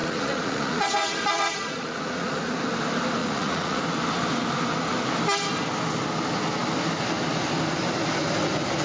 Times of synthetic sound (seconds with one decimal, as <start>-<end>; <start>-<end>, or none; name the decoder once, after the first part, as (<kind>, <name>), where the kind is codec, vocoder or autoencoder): 0.0-2.4 (vocoder, Vocos); 3.2-3.8